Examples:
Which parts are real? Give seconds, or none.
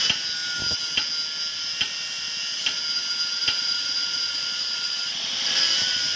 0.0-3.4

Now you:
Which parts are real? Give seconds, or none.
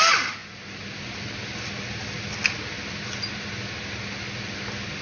0.0-5.0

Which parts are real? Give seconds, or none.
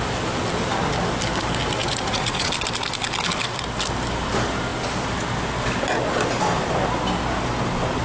0.0-1.8; 2.5-8.0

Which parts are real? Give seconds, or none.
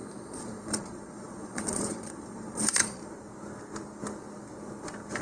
3.1-5.2